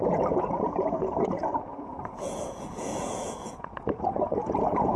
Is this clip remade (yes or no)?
yes